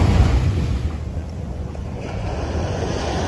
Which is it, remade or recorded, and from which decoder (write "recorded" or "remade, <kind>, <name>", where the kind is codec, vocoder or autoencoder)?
remade, vocoder, Vocos